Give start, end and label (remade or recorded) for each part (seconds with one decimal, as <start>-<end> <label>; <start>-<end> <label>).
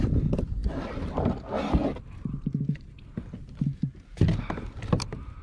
0.0-5.4 recorded